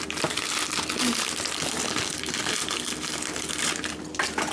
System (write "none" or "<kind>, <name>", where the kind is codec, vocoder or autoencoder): none